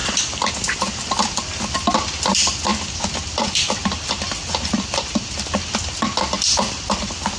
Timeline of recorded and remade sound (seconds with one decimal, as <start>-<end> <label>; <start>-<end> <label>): 0.0-7.4 recorded